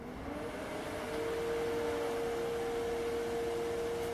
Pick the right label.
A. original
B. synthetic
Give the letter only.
A